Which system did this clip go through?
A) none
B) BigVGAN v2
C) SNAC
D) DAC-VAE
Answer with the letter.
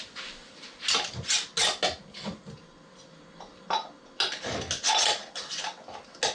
A